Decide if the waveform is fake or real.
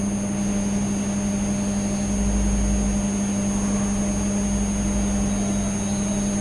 real